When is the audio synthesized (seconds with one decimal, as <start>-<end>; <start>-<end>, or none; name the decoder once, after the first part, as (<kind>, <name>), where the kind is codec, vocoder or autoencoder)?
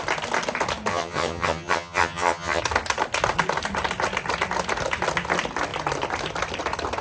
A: 0.9-2.6 (vocoder, HiFi-GAN)